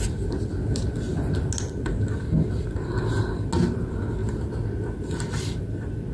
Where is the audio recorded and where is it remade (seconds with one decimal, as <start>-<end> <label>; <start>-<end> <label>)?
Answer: 0.0-6.1 recorded